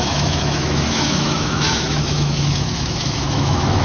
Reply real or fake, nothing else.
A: fake